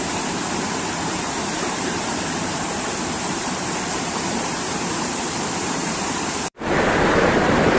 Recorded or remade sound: remade